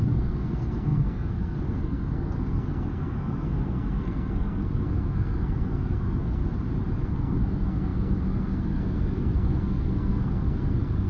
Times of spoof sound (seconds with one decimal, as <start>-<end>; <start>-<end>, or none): 0.0-6.4; 7.0-11.1